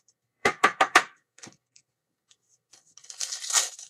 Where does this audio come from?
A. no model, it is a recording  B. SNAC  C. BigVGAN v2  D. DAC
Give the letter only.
B